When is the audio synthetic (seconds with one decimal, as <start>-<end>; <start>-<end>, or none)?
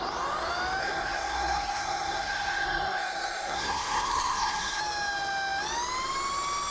0.8-4.8